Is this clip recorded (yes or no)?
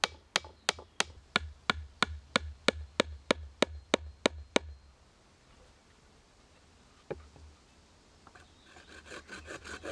yes